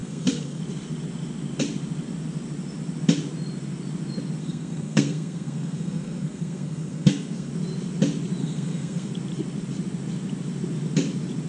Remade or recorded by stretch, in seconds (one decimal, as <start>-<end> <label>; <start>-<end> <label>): 0.0-0.6 remade; 0.6-4.4 recorded; 4.4-7.5 remade; 7.5-8.4 recorded; 8.4-9.1 remade; 9.1-11.5 recorded